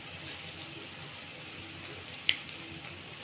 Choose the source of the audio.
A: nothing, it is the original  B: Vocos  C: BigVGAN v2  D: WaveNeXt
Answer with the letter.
A